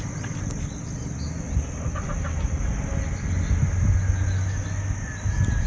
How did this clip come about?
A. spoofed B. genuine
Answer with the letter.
B